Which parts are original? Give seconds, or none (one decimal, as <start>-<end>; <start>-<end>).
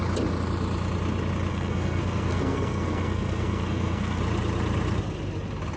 0.0-1.5; 4.2-5.8